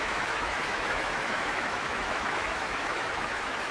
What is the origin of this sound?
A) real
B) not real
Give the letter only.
B